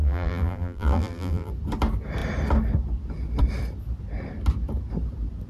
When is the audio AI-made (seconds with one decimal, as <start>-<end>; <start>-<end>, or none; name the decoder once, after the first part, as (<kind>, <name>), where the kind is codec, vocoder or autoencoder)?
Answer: 0.0-1.5 (vocoder, BigVGAN v2)